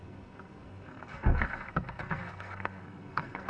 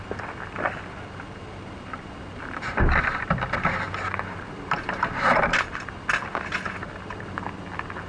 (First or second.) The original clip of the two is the second